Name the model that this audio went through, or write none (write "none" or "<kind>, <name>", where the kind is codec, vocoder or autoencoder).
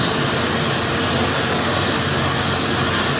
none